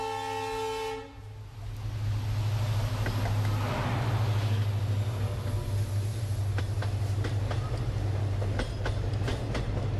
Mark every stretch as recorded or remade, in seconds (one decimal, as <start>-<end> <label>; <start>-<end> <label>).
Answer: 0.0-10.0 recorded